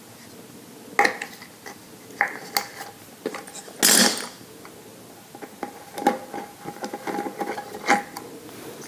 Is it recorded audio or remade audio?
recorded